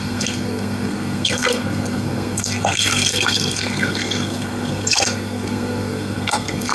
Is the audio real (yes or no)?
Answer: no